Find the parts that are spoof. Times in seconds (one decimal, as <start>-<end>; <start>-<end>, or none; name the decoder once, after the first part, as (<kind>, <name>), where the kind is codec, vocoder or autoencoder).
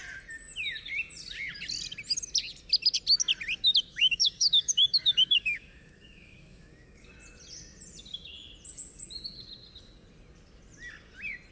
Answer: 3.9-7.1 (codec, DAC)